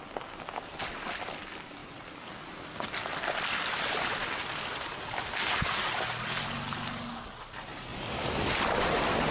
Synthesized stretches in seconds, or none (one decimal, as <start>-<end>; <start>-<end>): 7.9-8.5